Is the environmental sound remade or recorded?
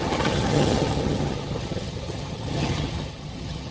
remade